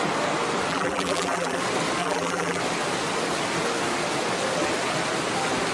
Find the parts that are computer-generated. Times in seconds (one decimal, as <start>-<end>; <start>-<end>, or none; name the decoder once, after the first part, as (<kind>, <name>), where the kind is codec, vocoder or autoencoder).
0.7-1.6 (vocoder, BigVGAN v2); 2.0-2.6